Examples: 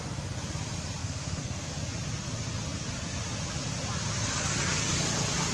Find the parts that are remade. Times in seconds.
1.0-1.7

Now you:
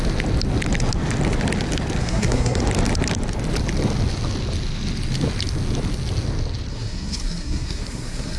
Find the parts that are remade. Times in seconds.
2.0-2.6; 6.7-8.4

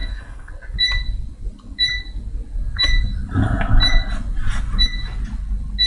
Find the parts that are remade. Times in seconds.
0.0-0.5

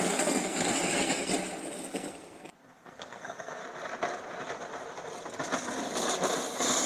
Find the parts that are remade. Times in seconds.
0.0-1.3; 1.9-3.6

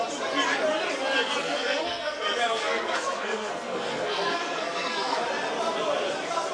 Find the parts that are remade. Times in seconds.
1.4-5.2

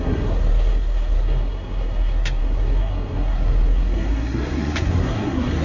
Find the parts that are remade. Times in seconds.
0.0-5.6

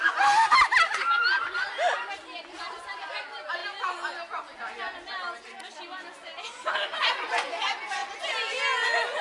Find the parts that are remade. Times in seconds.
none